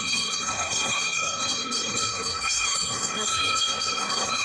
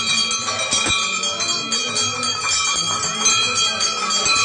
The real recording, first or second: second